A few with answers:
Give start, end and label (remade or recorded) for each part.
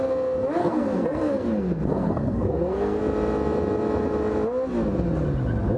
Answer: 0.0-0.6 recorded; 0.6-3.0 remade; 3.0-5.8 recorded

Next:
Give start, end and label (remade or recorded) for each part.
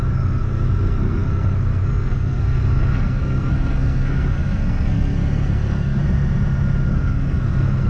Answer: 0.0-6.0 remade; 6.0-6.9 recorded; 6.9-7.9 remade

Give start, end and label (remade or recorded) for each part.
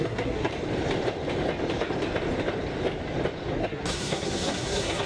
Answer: 0.0-0.5 remade; 0.5-3.6 recorded; 3.6-5.1 remade